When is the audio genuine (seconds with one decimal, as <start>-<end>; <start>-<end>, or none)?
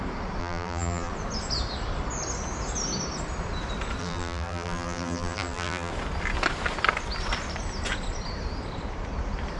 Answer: 0.0-0.4; 1.1-4.0; 5.9-9.6